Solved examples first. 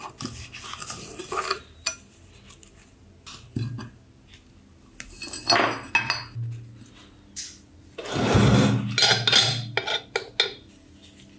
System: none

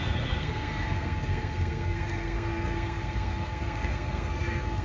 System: codec, SNAC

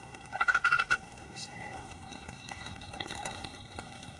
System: codec, SNAC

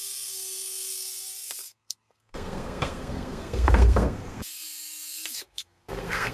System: codec, SNAC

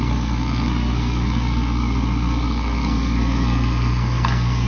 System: codec, SNAC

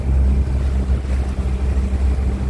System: none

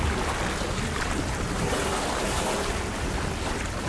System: none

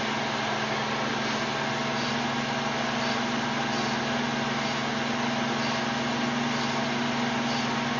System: none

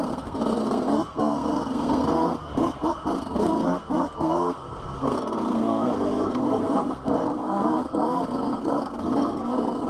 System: codec, SNAC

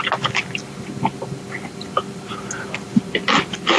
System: none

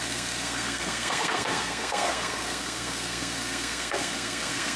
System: codec, SNAC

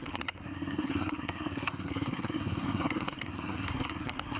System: codec, SNAC